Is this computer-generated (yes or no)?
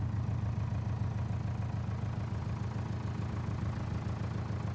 no